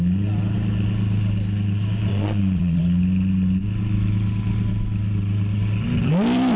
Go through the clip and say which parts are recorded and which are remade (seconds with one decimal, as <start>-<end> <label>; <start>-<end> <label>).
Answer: 0.0-2.1 recorded; 2.1-2.8 remade; 2.8-6.6 recorded